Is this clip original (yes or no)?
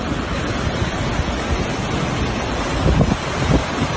yes